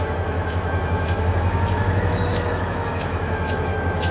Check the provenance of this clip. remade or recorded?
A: remade